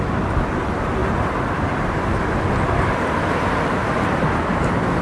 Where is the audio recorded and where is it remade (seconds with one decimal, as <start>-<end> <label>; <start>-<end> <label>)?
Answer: 0.0-5.0 recorded